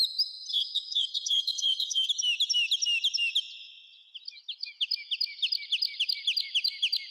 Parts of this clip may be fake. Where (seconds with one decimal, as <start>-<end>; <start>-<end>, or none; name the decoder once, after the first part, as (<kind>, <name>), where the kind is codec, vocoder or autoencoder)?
0.5-2.1 (codec, SNAC)